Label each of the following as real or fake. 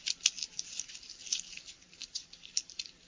fake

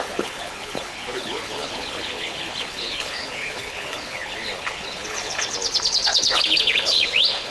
fake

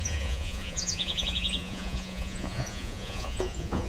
fake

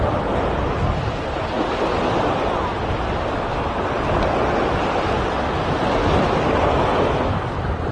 real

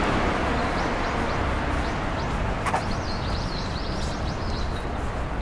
real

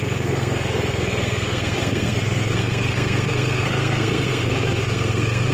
fake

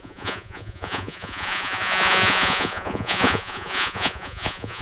fake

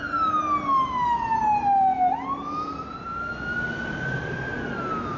real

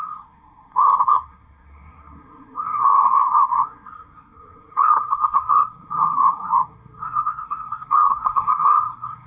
fake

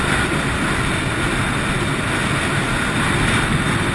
real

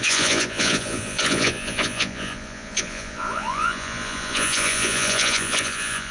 fake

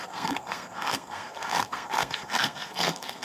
fake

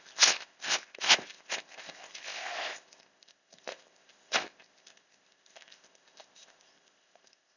fake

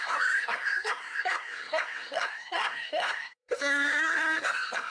fake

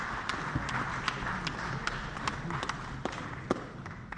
real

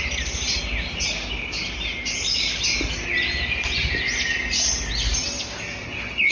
real